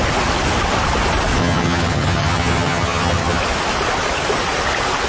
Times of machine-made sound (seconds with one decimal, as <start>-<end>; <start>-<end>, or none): 1.4-3.4